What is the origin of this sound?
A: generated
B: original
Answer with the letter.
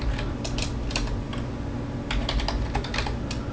B